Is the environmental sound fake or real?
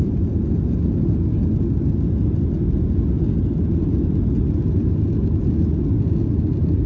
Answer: real